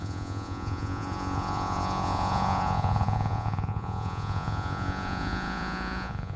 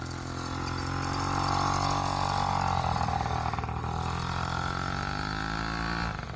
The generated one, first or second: first